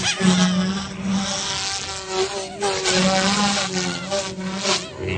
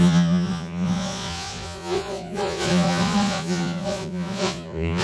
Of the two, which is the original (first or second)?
first